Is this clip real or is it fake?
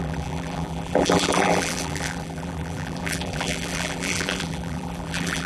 fake